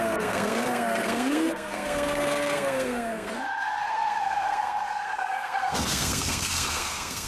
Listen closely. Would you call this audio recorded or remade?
remade